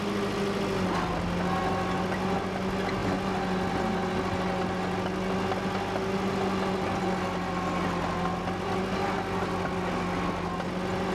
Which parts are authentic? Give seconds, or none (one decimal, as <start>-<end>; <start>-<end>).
0.0-11.1